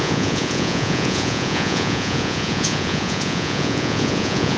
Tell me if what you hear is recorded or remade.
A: remade